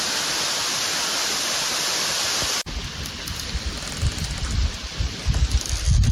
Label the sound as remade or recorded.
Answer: recorded